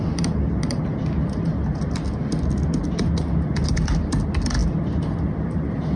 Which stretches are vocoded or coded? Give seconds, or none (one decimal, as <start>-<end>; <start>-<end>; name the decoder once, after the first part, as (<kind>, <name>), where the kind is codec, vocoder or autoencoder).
none